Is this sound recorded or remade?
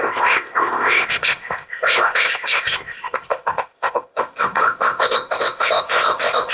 remade